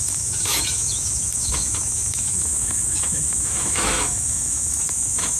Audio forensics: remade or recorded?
remade